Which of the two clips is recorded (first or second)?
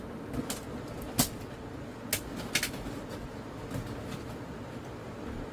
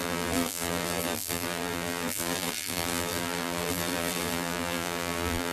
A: first